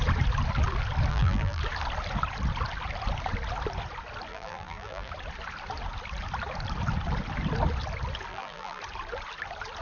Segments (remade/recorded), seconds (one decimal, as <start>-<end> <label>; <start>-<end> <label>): 0.0-1.1 recorded; 1.1-1.6 remade; 1.6-4.3 recorded; 4.3-5.1 remade; 5.1-8.3 recorded; 8.3-8.8 remade; 8.8-9.8 recorded